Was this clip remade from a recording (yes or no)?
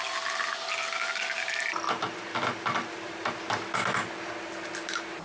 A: no